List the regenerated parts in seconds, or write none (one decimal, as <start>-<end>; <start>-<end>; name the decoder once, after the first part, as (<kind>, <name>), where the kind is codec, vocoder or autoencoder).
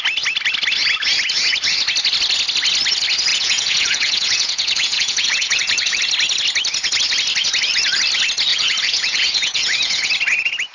3.3-6.0 (vocoder, Vocos); 8.5-10.1